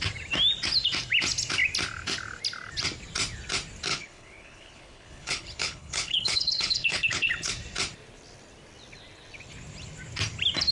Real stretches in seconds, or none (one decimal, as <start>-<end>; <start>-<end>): 0.0-3.9; 7.5-10.7